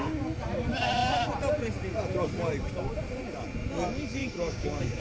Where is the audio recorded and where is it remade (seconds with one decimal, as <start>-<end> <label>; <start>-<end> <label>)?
0.0-4.2 recorded; 4.2-5.0 remade